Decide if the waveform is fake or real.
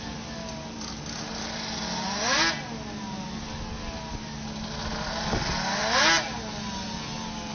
real